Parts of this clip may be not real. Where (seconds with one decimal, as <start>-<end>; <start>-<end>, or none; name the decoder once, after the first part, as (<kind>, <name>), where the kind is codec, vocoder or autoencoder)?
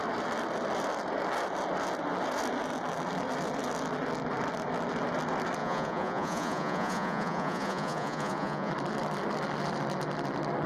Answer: 5.6-8.7 (vocoder, Vocos)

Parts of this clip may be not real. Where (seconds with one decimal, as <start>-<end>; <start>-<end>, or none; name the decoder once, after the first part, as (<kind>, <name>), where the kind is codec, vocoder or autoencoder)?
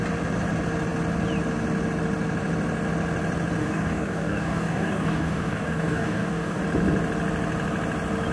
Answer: 3.6-6.6 (codec, DAC)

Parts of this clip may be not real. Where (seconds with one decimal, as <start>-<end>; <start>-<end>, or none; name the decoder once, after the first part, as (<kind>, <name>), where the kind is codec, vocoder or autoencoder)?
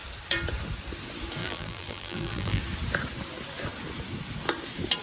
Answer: 1.4-2.6 (vocoder, BigVGAN v2)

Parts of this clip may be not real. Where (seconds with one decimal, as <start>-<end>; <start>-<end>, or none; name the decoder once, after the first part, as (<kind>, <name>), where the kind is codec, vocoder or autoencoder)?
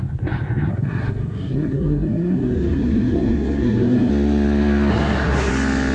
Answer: 0.7-4.1 (codec, SNAC); 4.9-5.5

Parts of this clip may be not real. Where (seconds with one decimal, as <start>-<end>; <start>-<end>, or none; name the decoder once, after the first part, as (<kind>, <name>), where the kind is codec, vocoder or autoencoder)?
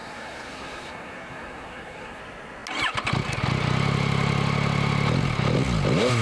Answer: 0.0-2.2 (codec, SNAC)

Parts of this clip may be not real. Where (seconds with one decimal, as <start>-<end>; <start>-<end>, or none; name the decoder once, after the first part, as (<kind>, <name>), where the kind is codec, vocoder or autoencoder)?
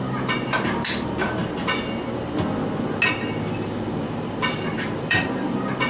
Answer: 0.0-1.4 (vocoder, BigVGAN v2); 3.9-5.9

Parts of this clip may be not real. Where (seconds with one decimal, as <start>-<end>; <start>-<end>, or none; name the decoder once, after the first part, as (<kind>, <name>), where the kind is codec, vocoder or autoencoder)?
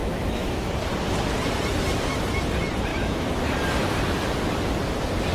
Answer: 0.0-0.7 (autoencoder, DAC-VAE); 2.9-3.5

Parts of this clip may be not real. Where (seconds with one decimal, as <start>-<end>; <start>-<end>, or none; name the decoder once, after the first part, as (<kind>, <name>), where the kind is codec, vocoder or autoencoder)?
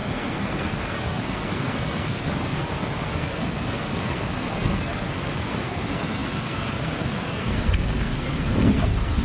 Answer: 0.0-9.2 (codec, SNAC)